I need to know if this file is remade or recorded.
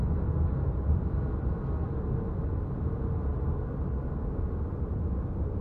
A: recorded